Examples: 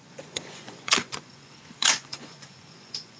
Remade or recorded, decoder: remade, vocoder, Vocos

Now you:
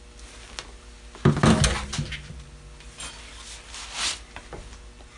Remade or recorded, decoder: recorded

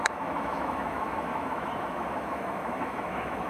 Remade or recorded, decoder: remade, autoencoder, DAC-VAE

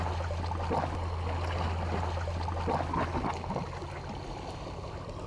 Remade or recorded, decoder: recorded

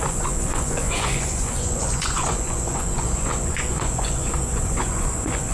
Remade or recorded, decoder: remade, vocoder, Vocos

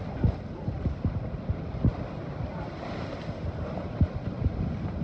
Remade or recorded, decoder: recorded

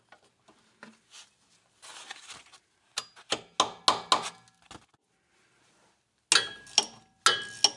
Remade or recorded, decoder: recorded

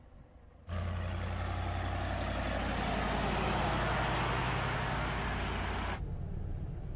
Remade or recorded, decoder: recorded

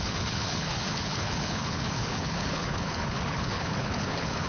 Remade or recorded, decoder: remade, codec, HILCodec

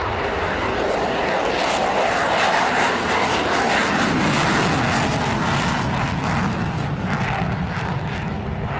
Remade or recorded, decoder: recorded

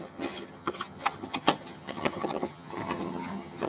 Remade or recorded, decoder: remade, vocoder, HiFi-GAN